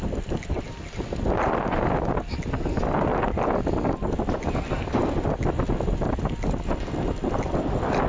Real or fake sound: real